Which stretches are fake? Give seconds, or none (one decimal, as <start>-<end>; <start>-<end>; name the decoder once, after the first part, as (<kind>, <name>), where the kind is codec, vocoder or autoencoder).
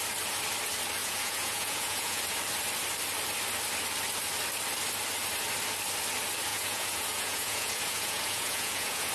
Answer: 1.0-2.2 (vocoder, Vocos); 6.5-9.1